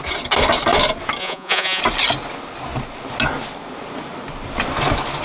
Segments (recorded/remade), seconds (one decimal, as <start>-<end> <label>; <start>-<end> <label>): 0.0-1.2 recorded; 1.2-1.8 remade; 1.8-5.2 recorded

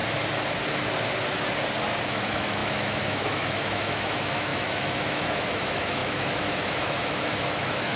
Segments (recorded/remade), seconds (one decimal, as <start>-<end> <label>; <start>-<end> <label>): 0.0-2.1 recorded; 2.1-8.0 remade

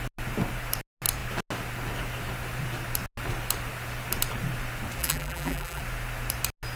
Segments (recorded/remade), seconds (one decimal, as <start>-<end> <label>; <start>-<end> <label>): 0.0-5.0 recorded; 5.0-5.8 remade; 5.8-6.8 recorded

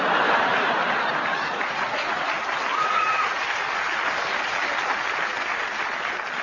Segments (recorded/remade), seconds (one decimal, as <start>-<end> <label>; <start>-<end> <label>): 0.0-1.5 recorded; 1.5-2.3 remade; 2.3-2.7 recorded; 2.7-3.4 remade; 3.4-6.4 recorded

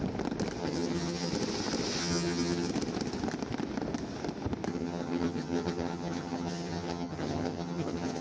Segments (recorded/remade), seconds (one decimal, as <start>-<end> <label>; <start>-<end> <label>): 0.0-0.6 recorded; 0.6-1.3 remade; 1.3-2.0 recorded; 2.0-2.7 remade; 2.7-4.7 recorded; 4.7-8.2 remade